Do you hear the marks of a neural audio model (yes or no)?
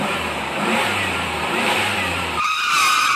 yes